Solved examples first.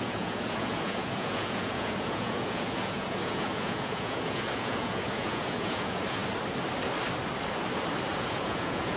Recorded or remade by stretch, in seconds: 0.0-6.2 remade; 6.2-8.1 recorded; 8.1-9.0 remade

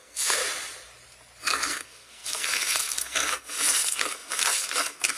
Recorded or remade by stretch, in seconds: 0.0-0.4 remade; 0.4-1.4 recorded; 1.4-5.2 remade

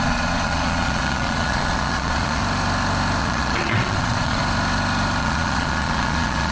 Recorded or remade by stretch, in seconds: 0.0-2.4 remade; 2.4-3.2 recorded; 3.2-4.4 remade; 4.4-5.2 recorded; 5.2-6.5 remade

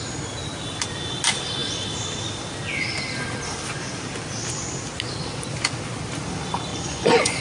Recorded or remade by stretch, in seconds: 0.0-6.7 recorded; 6.7-7.4 remade

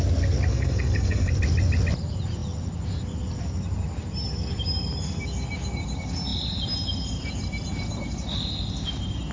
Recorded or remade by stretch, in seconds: 0.0-0.5 recorded; 0.5-1.3 remade; 1.3-9.3 recorded